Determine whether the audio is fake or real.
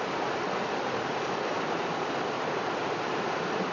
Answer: real